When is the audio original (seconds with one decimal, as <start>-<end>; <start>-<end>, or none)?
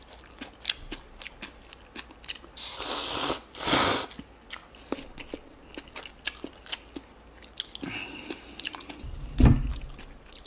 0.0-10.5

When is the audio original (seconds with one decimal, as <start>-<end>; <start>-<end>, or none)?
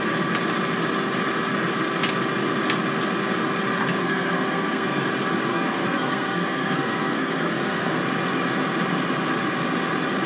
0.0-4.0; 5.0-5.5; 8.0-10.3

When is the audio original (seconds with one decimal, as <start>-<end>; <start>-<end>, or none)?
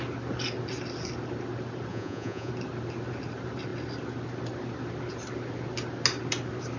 0.0-1.9; 2.5-6.8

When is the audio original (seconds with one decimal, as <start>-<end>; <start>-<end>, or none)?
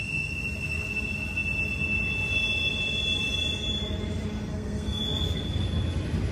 0.0-4.5; 5.0-6.3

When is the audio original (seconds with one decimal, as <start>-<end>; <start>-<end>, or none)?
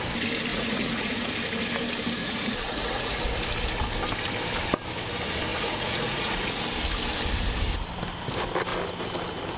0.0-0.5; 1.3-2.2; 3.2-5.5; 6.6-9.6